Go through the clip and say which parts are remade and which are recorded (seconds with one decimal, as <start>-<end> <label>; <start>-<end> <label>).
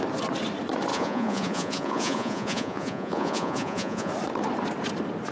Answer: 0.0-0.9 recorded; 0.9-4.1 remade; 4.1-5.3 recorded